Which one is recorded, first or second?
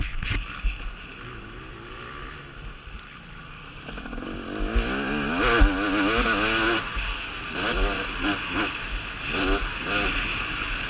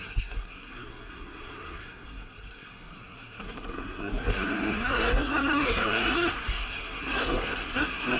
first